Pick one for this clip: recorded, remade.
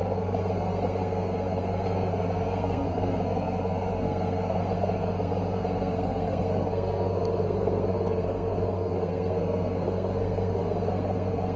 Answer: remade